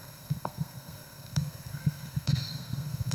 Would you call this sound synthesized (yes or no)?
yes